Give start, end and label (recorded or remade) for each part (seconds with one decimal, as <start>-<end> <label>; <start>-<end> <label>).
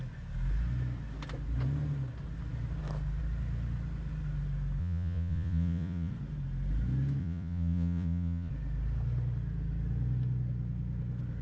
0.0-4.8 recorded; 4.8-6.1 remade; 6.1-7.2 recorded; 7.2-8.5 remade; 8.5-11.4 recorded